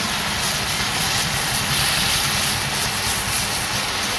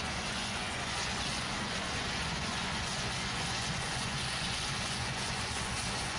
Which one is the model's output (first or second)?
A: second